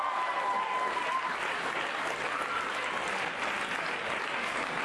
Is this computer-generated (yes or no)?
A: no